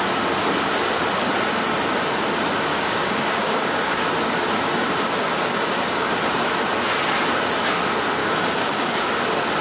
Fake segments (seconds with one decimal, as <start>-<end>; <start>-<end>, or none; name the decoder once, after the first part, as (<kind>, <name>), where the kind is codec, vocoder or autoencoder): 2.7-4.0 (codec, DAC); 4.5-6.1; 8.2-9.1